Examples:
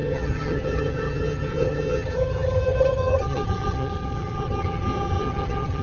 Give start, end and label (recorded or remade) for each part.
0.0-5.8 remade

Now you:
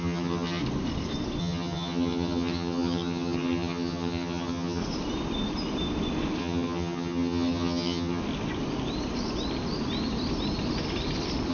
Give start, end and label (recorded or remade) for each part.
0.0-0.6 remade; 0.6-1.4 recorded; 1.4-4.8 remade; 4.8-6.4 recorded; 6.4-8.2 remade; 8.2-11.5 recorded